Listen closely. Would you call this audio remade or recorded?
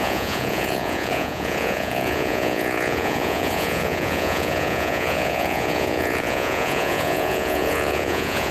remade